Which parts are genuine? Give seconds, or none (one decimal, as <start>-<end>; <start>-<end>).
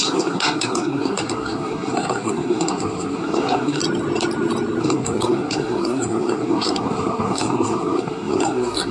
3.8-4.8